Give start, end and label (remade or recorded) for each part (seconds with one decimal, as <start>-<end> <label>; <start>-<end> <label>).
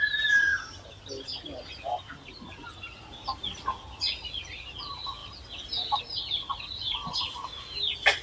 0.0-8.2 recorded